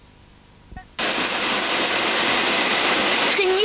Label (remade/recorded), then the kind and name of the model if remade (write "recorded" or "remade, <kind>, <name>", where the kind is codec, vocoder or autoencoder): recorded